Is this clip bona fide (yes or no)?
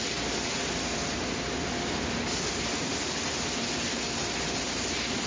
yes